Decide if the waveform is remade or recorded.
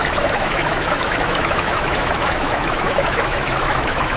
remade